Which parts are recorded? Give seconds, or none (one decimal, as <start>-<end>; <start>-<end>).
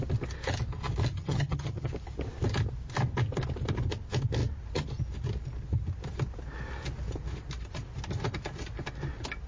0.0-1.1; 1.9-9.5